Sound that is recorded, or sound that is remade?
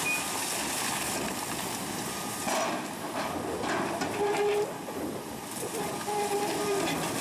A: recorded